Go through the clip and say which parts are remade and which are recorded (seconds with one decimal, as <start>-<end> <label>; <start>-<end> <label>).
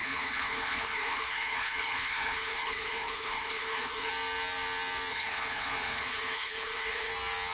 0.0-4.1 remade; 4.1-5.1 recorded; 5.1-7.1 remade; 7.1-7.5 recorded